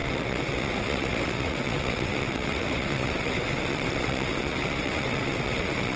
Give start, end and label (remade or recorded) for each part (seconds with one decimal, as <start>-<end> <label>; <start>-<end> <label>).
0.0-6.0 remade